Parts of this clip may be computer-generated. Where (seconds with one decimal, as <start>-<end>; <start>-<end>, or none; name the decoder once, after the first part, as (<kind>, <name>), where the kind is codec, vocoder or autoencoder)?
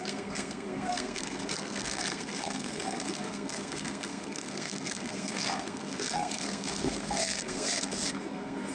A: 0.0-8.7 (codec, SNAC)